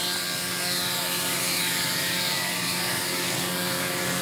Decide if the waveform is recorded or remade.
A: remade